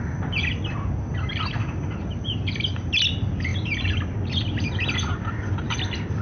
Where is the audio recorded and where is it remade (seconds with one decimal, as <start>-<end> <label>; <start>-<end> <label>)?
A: 0.0-2.1 recorded; 2.1-2.8 remade; 2.8-6.2 recorded